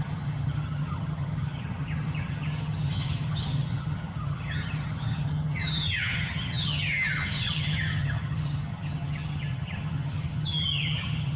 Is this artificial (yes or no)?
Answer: yes